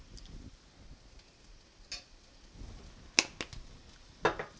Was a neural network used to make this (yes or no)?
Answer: no